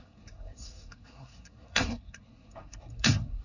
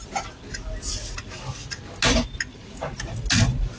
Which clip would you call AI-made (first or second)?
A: first